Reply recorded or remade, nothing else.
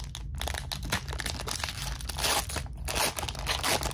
recorded